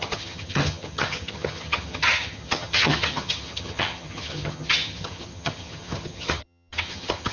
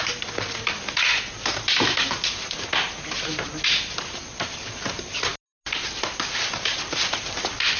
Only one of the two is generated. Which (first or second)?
first